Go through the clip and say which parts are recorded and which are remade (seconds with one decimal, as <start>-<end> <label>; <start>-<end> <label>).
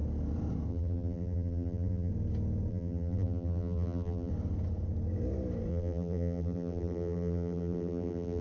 0.0-0.7 recorded; 0.7-2.1 remade; 2.1-2.7 recorded; 2.7-4.3 remade; 4.3-5.7 recorded; 5.7-8.4 remade